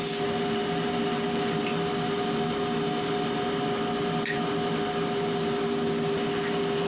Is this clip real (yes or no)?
yes